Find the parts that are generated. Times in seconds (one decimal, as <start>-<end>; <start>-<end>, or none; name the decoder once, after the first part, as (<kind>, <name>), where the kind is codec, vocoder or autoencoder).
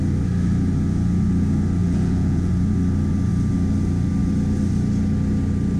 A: 1.8-2.5 (vocoder, Vocos)